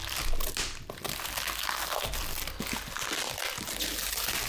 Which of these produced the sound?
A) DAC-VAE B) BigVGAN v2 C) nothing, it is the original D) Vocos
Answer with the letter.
C